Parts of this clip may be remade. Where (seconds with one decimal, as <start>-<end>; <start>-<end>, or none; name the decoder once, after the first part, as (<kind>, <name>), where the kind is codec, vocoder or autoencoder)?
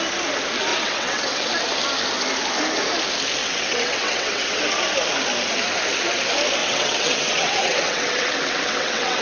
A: 0.7-1.5 (vocoder, WaveNeXt); 3.4-4.6; 6.6-9.2